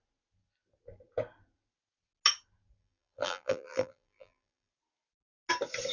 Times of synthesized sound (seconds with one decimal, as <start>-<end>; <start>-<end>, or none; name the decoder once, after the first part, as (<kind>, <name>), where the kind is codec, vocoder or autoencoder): 2.8-4.7 (vocoder, BigVGAN v2)